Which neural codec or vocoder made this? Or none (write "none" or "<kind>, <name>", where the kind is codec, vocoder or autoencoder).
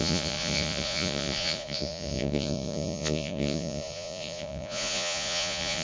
vocoder, Vocos